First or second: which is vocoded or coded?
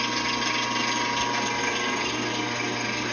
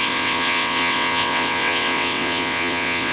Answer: second